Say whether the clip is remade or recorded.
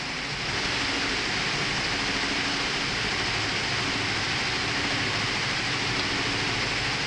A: recorded